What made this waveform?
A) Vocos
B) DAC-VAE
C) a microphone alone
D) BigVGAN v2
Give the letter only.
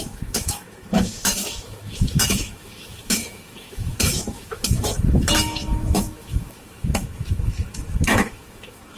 B